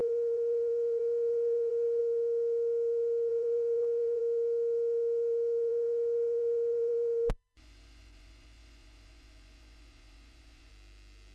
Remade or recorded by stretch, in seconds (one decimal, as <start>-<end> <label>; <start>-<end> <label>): 0.0-2.0 remade; 2.0-3.3 recorded; 3.3-4.2 remade; 4.2-5.7 recorded; 5.7-10.7 remade; 10.7-11.3 recorded